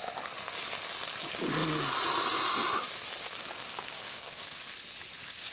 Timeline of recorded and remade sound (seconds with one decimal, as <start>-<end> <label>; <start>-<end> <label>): 0.0-3.7 recorded; 3.7-4.6 remade; 4.6-5.5 recorded